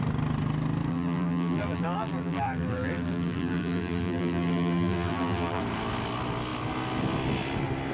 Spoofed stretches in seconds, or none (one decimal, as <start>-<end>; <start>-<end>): 0.9-5.6